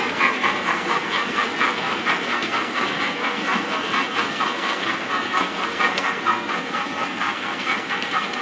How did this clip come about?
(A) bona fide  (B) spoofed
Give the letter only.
B